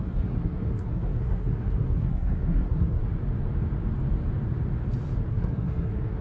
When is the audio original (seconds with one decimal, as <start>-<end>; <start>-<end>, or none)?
3.0-5.3